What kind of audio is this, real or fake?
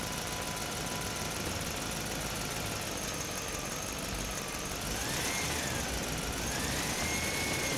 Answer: real